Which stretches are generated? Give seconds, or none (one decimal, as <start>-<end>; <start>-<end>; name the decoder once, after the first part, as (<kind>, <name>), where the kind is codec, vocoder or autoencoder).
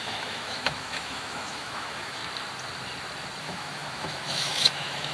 0.0-2.2 (autoencoder, DAC-VAE); 3.4-5.1